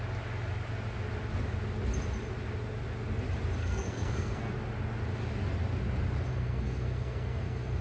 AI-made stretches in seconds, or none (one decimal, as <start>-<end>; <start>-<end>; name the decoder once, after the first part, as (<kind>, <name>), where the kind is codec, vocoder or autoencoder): 3.6-4.5 (codec, SNAC); 6.3-7.8